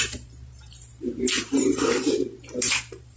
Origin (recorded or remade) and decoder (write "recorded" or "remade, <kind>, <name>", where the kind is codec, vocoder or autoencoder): remade, vocoder, BigVGAN v2